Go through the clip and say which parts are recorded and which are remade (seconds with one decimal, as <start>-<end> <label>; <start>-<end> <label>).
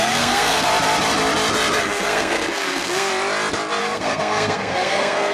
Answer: 0.0-0.7 remade; 0.7-1.8 recorded; 1.8-3.1 remade; 3.1-3.8 recorded; 3.8-5.3 remade